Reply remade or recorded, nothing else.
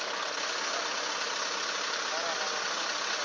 recorded